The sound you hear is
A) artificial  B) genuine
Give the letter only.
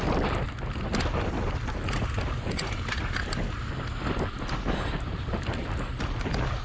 B